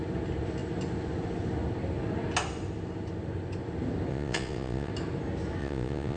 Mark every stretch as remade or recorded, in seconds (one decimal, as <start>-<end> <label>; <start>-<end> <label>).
0.0-4.1 recorded; 4.1-4.9 remade; 4.9-5.6 recorded; 5.6-6.2 remade